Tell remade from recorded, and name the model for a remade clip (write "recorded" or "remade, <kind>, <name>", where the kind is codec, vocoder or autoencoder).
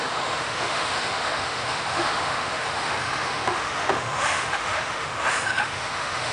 remade, autoencoder, DAC-VAE